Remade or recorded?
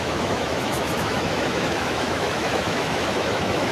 remade